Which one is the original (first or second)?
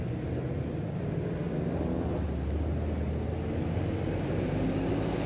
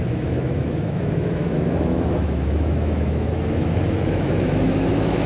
first